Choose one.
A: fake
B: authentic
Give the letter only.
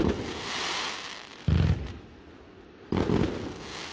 B